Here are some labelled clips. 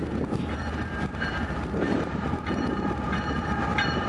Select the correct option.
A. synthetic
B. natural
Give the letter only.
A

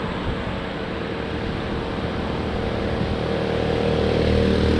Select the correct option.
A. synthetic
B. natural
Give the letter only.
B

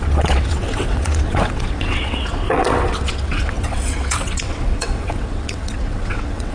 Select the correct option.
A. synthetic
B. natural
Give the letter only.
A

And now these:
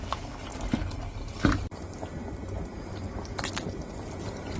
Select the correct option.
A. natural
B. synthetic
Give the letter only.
A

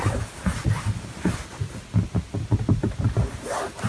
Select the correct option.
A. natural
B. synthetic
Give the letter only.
A